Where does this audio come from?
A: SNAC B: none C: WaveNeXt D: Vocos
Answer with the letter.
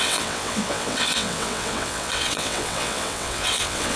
C